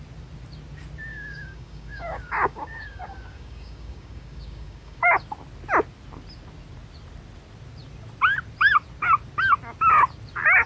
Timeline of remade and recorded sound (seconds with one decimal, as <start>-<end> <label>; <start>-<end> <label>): 0.0-1.1 recorded; 1.1-5.0 remade; 5.0-10.7 recorded